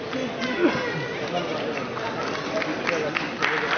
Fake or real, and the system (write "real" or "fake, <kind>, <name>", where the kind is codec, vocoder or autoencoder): real